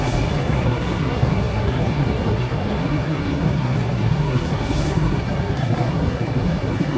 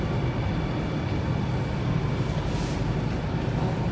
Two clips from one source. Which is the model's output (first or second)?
first